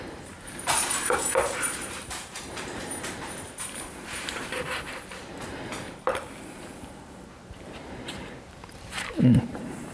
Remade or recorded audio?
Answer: remade